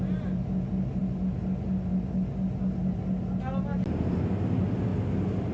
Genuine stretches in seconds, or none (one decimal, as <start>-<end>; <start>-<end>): 0.0-5.5

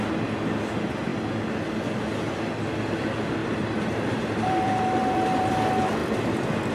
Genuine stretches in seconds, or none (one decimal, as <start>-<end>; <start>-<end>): 0.0-3.4; 5.5-6.7

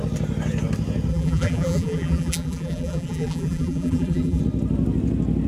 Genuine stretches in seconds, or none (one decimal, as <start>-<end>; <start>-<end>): 0.0-1.1; 4.4-5.5

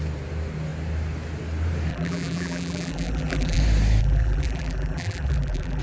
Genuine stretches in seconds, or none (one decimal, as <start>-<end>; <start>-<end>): 0.0-1.9; 3.6-4.0